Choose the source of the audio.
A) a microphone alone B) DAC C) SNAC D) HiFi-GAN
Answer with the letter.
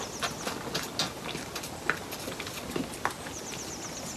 A